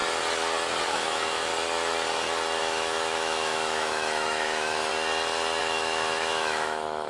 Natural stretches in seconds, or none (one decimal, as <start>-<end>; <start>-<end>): 0.0-0.8; 1.5-2.6; 4.9-5.6